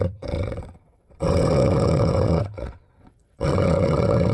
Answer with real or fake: fake